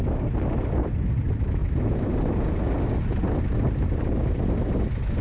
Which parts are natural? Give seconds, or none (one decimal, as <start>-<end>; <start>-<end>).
0.0-5.2